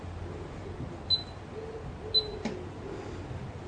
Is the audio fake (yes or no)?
no